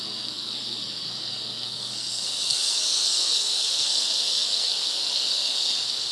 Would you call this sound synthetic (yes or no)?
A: yes